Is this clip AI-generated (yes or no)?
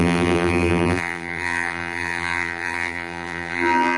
yes